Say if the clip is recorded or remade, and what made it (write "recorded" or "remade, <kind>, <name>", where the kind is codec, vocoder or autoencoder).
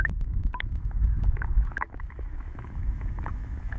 remade, autoencoder, DAC-VAE